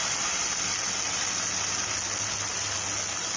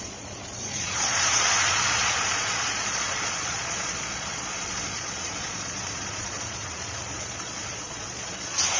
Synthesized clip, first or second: second